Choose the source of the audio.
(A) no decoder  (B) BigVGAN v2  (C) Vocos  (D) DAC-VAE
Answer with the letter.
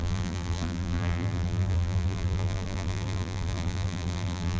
B